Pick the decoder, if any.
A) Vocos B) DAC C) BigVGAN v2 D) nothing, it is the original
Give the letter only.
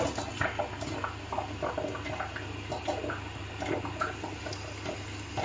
D